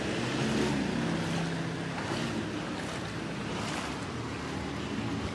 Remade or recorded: recorded